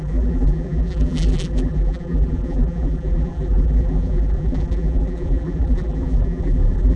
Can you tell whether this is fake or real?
fake